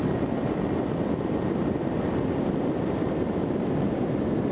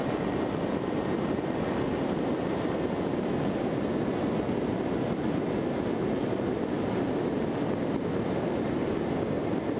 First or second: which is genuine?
second